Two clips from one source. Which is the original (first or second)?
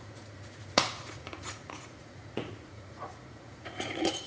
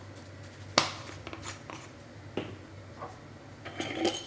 second